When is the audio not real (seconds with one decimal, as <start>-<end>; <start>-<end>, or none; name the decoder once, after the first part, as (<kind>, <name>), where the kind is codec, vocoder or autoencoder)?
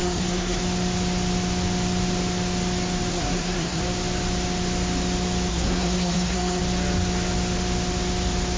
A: 0.0-0.6 (codec, SNAC); 3.1-3.8; 5.5-6.6